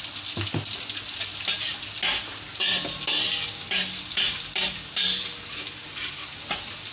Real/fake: real